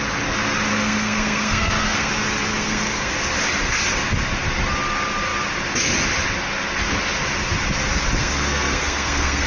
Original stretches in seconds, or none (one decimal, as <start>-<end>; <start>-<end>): 0.0-0.7; 2.1-2.5; 3.1-8.2